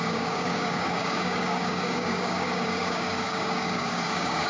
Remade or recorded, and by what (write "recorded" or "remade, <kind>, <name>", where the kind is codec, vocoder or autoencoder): remade, codec, DAC